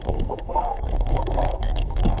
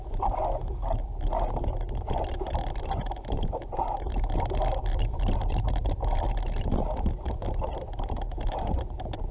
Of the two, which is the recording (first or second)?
second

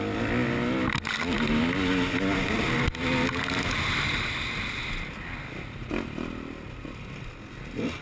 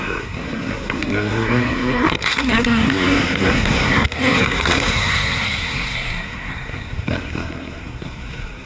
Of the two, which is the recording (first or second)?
first